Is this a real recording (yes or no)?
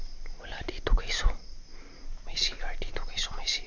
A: yes